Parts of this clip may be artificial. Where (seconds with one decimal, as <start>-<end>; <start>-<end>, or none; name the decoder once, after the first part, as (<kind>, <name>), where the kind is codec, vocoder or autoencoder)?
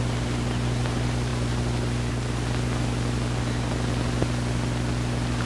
none